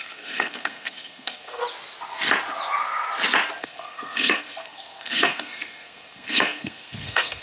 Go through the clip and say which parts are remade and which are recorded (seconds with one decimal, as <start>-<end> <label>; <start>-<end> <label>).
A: 0.0-1.6 remade; 1.6-3.6 recorded; 3.6-7.4 remade